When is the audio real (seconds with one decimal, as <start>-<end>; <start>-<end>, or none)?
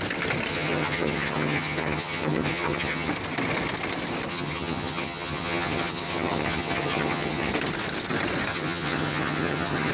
0.0-0.5; 3.1-4.3; 7.5-8.5